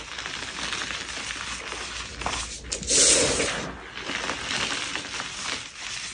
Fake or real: real